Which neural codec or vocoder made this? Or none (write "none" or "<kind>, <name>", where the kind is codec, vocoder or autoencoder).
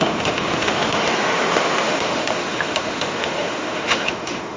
autoencoder, DAC-VAE